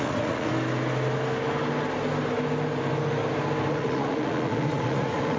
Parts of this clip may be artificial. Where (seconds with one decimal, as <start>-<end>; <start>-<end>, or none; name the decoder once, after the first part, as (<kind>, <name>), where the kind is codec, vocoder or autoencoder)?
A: 0.0-0.5 (vocoder, Vocos); 3.7-5.4